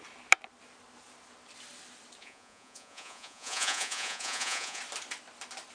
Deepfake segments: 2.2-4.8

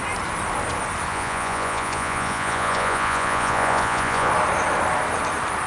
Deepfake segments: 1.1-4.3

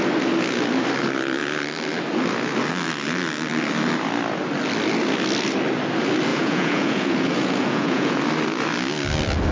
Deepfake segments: 6.3-8.2

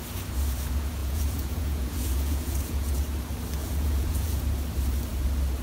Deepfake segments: 1.0-3.0; 3.6-4.4

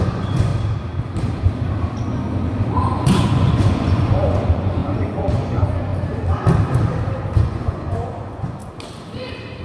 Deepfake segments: 0.0-0.5; 2.7-5.9; 7.4-8.6

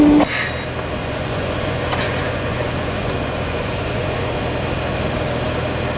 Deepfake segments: 1.0-4.4